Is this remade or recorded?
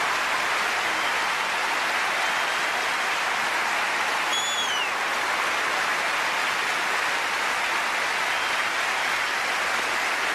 recorded